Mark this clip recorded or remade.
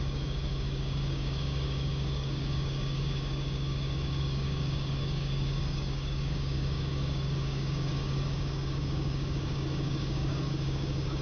remade